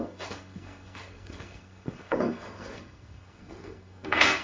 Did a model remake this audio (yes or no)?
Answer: yes